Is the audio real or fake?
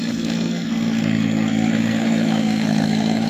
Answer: fake